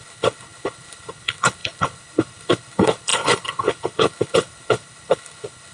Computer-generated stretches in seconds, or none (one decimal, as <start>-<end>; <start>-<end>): 0.0-5.7